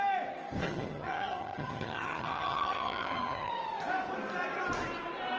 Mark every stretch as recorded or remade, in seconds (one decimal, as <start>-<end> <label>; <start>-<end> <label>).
0.0-0.6 recorded; 0.6-3.5 remade; 3.5-5.4 recorded